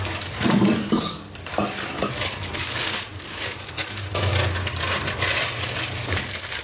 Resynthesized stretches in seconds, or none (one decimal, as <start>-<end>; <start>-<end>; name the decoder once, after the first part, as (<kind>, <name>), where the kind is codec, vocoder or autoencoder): 0.0-1.5 (codec, DAC); 2.3-3.1; 3.7-4.3; 5.9-6.6